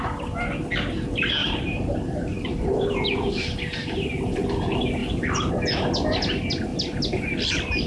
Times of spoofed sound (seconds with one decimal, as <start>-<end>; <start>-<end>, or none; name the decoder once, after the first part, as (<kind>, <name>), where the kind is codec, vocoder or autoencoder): 1.4-3.3 (vocoder, BigVGAN v2); 5.0-5.5